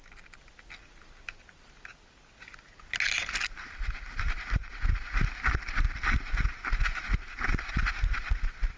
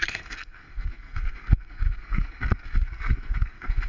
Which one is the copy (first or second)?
second